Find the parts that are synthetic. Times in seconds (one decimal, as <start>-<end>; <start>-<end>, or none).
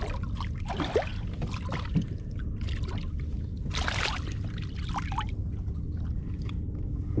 none